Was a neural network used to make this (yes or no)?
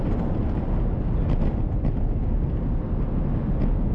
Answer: no